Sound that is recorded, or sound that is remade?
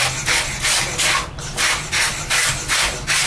recorded